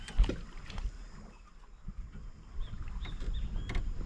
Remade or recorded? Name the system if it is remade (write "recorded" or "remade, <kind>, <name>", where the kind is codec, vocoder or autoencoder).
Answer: recorded